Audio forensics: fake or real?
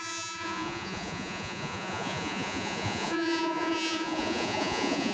fake